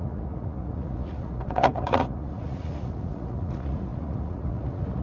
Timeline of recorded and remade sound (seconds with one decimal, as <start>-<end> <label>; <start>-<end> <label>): 0.0-5.0 remade